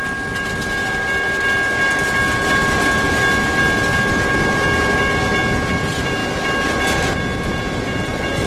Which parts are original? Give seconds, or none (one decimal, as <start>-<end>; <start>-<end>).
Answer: 0.0-8.5